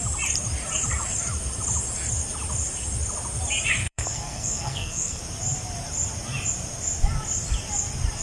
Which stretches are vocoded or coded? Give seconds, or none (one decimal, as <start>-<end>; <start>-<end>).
3.8-5.2